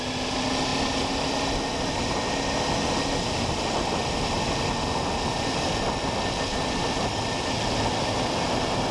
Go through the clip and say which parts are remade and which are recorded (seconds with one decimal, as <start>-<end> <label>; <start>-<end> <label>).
0.0-8.9 recorded

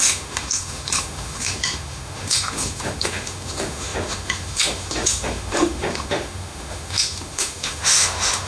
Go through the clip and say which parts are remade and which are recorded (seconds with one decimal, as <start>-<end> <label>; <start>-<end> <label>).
0.0-8.5 remade

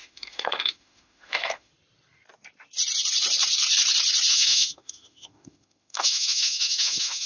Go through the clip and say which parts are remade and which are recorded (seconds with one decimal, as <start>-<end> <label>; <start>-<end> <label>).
0.0-1.7 remade; 1.7-4.3 recorded; 4.3-7.3 remade

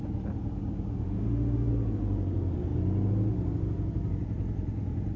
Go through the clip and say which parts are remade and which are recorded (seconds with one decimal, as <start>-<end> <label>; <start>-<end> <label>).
0.0-0.9 recorded; 0.9-1.7 remade; 1.7-5.2 recorded